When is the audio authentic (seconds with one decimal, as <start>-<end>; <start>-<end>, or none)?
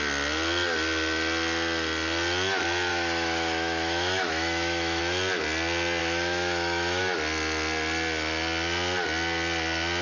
0.0-2.9; 5.0-6.0; 7.0-10.0